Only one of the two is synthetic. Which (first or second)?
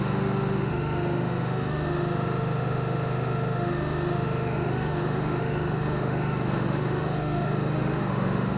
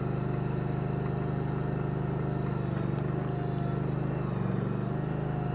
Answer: first